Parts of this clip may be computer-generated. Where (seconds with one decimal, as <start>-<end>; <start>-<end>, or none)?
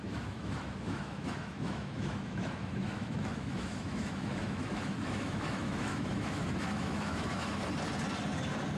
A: 0.0-7.6